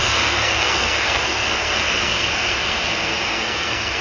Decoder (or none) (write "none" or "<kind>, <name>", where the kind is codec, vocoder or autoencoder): codec, SNAC